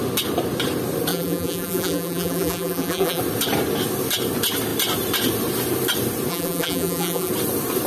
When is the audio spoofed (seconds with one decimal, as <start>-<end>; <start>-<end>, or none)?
1.1-3.2; 6.3-7.3